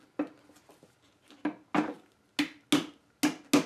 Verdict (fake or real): real